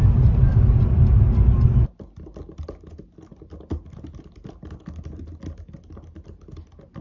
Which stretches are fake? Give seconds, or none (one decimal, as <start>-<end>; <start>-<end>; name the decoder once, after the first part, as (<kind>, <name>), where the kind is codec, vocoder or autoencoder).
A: none